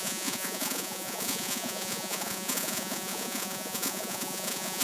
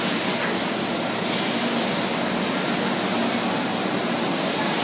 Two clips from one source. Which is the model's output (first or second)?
first